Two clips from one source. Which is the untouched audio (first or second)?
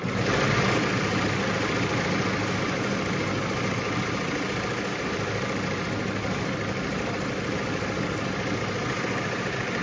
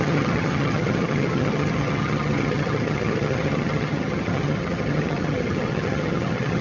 first